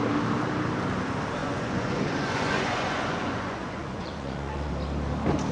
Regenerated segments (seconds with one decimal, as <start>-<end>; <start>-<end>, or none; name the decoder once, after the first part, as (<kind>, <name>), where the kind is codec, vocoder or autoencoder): 1.4-4.7 (vocoder, Vocos)